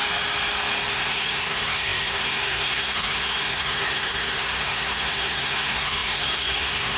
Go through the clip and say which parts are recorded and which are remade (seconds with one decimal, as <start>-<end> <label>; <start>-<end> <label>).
0.0-0.9 recorded; 0.9-7.0 remade